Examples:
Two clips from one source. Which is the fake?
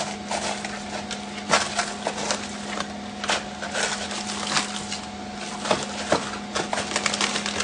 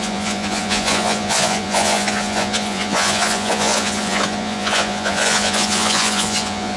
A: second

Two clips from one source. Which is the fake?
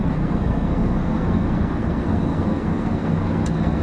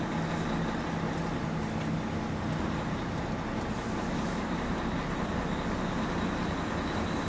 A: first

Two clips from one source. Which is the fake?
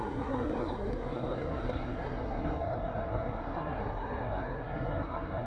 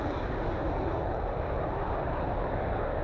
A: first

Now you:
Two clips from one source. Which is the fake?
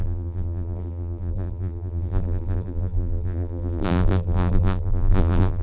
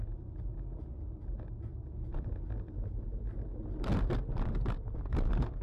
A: first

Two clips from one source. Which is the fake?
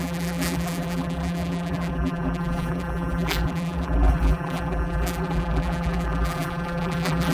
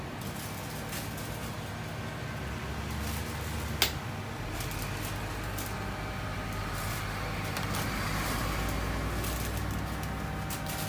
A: first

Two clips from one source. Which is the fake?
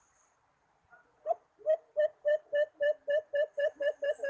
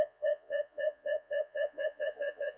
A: second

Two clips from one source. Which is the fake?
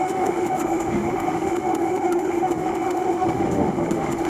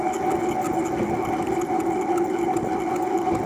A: first